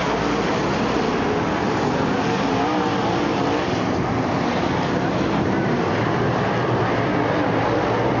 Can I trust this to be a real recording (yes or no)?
yes